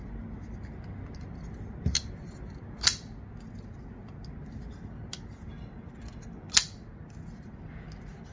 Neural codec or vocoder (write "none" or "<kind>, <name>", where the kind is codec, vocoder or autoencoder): none